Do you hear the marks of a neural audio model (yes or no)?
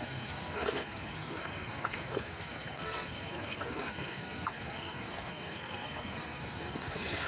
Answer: yes